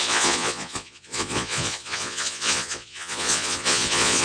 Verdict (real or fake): fake